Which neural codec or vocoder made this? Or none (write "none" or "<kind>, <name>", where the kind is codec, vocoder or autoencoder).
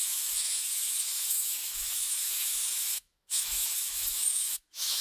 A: autoencoder, DAC-VAE